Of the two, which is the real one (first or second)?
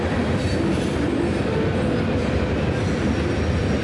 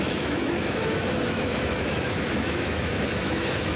first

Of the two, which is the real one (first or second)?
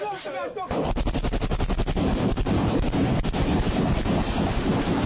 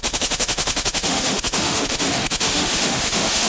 first